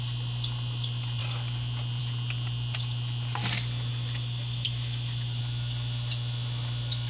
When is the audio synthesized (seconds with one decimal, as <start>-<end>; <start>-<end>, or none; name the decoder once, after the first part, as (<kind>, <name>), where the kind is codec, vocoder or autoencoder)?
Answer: 3.9-5.4 (autoencoder, DAC-VAE)